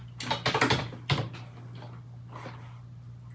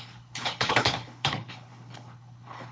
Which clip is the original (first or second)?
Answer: first